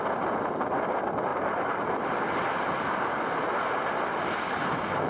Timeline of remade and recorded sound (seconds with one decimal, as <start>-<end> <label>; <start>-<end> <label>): 0.0-1.3 recorded; 1.3-4.4 remade; 4.4-5.1 recorded